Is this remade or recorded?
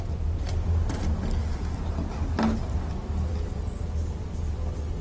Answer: recorded